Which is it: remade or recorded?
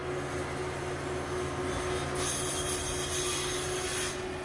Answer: recorded